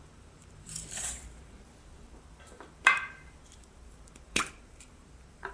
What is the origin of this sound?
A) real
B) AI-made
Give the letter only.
B